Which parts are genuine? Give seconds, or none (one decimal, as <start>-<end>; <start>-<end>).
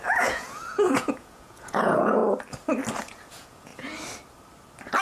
2.2-3.0; 3.7-5.0